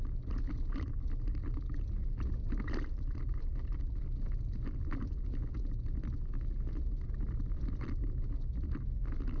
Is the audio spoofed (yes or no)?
no